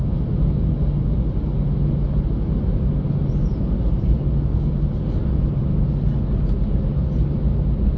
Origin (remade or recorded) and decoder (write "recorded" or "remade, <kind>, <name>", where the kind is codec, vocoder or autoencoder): recorded